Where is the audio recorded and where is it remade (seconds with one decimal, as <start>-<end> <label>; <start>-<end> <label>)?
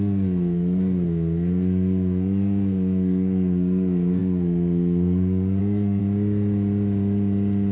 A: 0.0-6.0 remade; 6.0-7.7 recorded